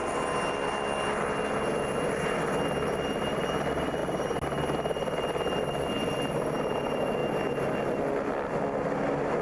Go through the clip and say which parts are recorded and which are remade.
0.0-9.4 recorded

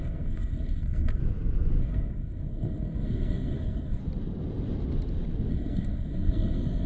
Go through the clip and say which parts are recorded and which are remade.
0.0-1.2 remade; 1.2-1.8 recorded; 1.8-4.0 remade; 4.0-5.5 recorded; 5.5-6.9 remade

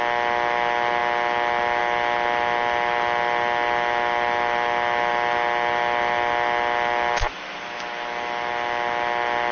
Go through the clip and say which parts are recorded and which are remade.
0.0-9.5 recorded

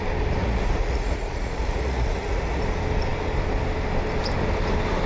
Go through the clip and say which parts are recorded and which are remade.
0.0-0.4 recorded; 0.4-2.6 remade; 2.6-5.1 recorded

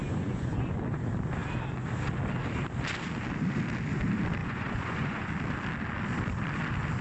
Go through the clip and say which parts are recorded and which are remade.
0.0-1.0 remade; 1.0-4.4 recorded; 4.4-5.3 remade; 5.3-7.0 recorded

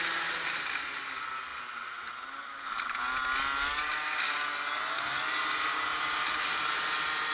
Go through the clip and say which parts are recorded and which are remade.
0.0-7.3 recorded